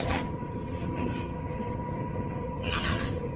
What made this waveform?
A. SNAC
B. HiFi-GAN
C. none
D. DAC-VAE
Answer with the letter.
B